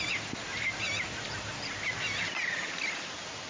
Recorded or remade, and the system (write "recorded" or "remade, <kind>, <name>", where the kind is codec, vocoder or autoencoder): recorded